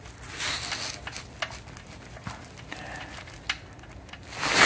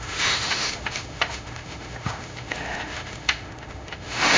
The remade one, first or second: second